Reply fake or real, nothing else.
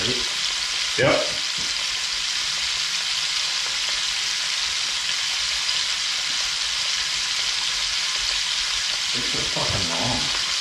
real